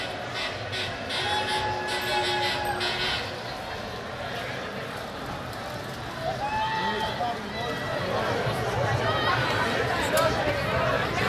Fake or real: real